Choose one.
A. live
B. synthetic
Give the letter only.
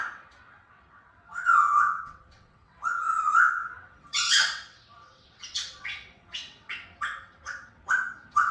B